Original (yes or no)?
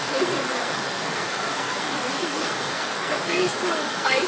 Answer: no